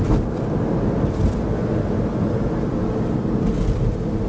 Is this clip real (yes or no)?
yes